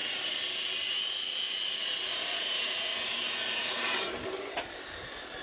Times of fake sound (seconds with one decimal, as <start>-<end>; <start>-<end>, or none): 1.8-5.0